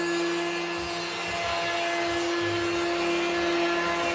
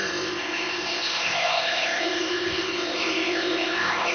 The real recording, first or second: first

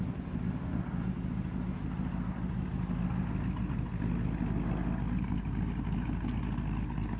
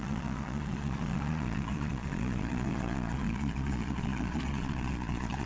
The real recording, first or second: first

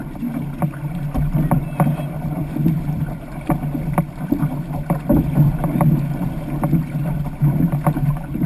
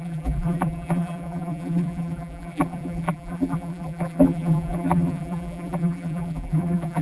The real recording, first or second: first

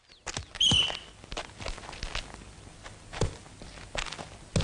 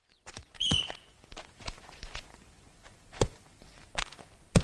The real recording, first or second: first